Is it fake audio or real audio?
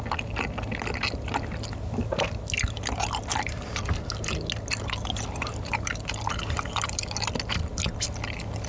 real